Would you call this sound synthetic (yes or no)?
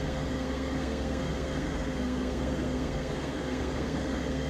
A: yes